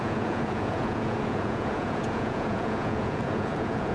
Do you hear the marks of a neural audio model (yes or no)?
yes